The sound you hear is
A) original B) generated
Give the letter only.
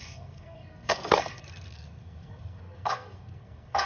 B